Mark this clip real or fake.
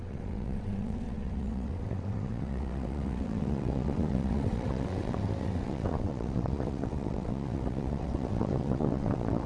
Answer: fake